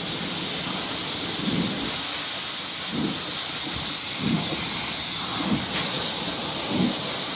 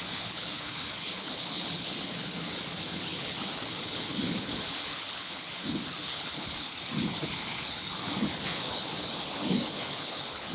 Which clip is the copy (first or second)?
second